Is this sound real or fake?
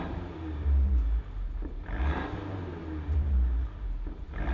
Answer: fake